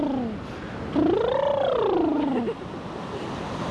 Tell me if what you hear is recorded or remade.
recorded